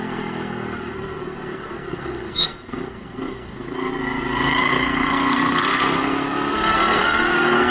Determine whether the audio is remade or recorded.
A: remade